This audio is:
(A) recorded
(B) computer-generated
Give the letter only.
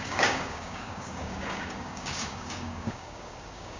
B